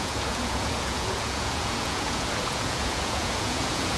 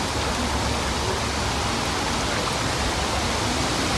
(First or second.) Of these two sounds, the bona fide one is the second